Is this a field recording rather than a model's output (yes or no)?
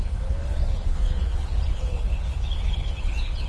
no